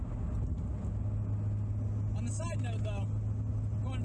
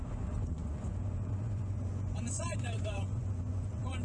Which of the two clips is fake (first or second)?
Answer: second